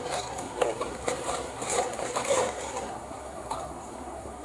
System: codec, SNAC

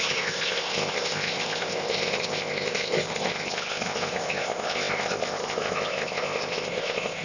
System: codec, ZipCodec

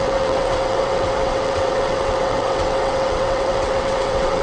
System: vocoder, WaveNeXt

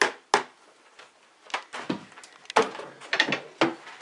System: none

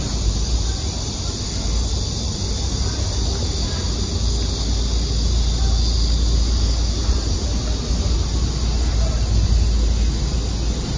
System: none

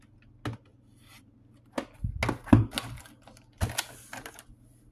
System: none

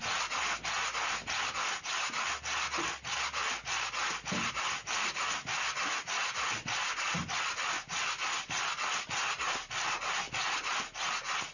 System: none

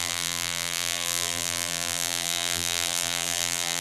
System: vocoder, BigVGAN v2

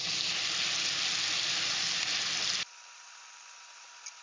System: none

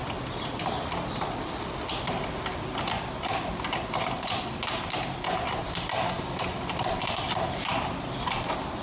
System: none